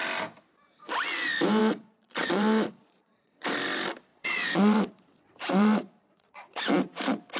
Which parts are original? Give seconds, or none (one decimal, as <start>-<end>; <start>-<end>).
0.0-1.6; 3.5-4.1; 6.6-7.4